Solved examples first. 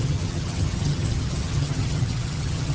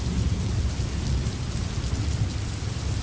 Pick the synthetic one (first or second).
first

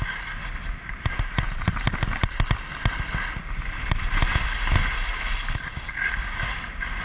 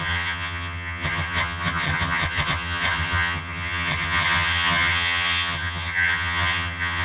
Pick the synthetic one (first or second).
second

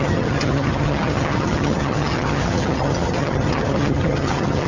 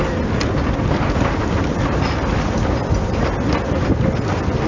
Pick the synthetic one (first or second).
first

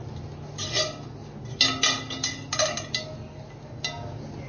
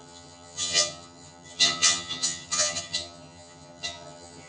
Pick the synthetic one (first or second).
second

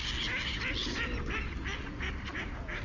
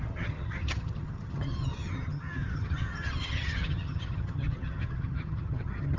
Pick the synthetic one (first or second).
second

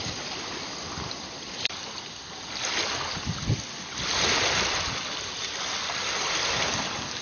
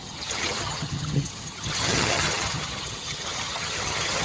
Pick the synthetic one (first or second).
second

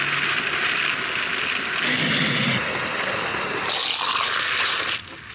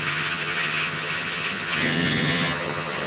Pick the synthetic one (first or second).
second